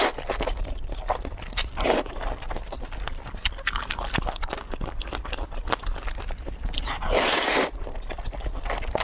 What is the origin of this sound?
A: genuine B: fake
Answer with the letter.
A